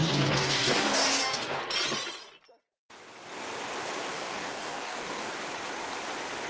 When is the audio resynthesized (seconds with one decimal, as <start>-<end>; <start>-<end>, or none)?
0.0-1.6; 4.1-5.3